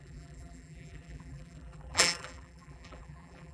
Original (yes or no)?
no